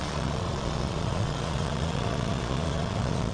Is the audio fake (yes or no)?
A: yes